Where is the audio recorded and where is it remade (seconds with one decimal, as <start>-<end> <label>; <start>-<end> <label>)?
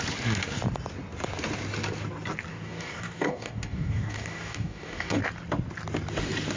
0.0-2.5 recorded; 2.5-5.2 remade; 5.2-6.6 recorded